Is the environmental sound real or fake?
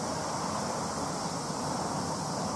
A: real